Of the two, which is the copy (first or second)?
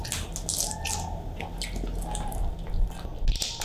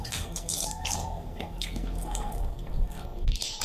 second